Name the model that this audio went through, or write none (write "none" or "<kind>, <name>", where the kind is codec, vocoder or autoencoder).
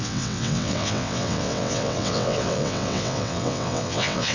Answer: vocoder, WaveNeXt